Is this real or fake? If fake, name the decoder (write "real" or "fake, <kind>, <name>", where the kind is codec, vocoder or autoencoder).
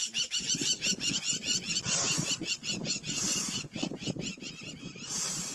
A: real